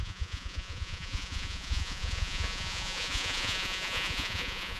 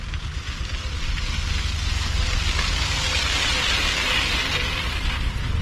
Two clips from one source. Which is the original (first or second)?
second